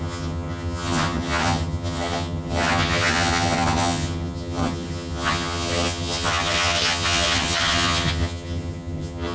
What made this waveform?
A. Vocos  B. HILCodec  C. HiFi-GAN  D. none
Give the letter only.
C